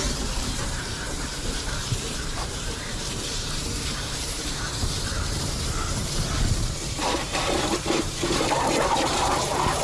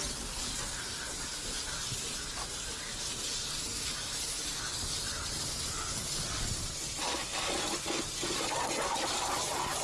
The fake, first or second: first